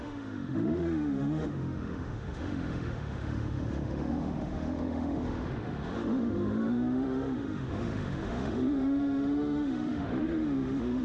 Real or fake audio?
fake